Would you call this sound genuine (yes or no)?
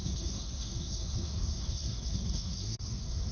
no